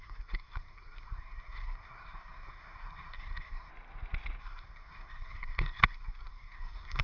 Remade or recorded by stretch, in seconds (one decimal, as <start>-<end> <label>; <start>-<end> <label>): 0.0-3.7 remade; 3.7-4.4 recorded; 4.4-7.0 remade